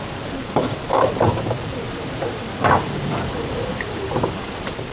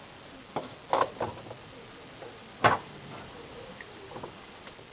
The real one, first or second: second